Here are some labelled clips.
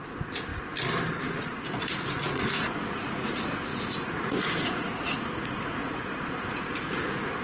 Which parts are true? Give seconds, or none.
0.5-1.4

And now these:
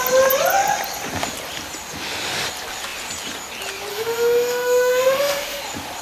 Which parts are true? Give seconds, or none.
0.0-3.9; 5.6-6.0

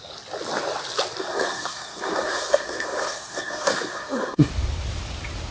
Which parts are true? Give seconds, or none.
0.0-1.2; 4.5-5.5

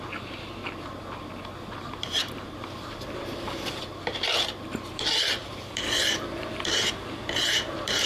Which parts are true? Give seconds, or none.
0.6-2.0

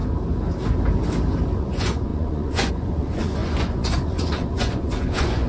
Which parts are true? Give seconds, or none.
0.0-1.6

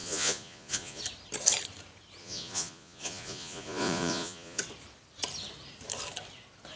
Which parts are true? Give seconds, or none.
1.0-2.2; 4.6-6.8